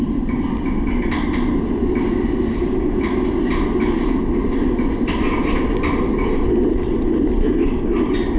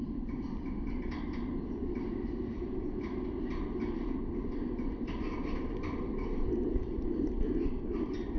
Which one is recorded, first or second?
first